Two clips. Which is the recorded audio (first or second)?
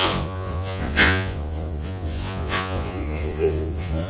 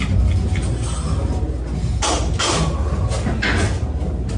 second